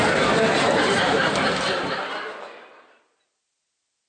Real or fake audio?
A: real